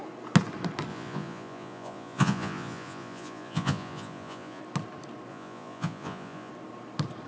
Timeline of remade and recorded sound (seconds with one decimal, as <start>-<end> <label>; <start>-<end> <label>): 0.0-0.9 recorded; 0.9-4.6 remade; 4.6-5.3 recorded; 5.3-6.5 remade; 6.5-7.3 recorded